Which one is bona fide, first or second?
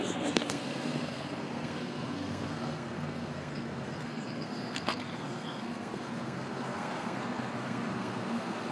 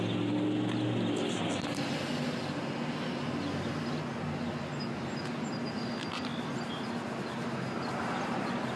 second